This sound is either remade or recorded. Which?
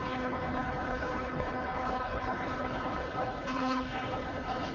remade